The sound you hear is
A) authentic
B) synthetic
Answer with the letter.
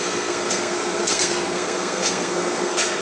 B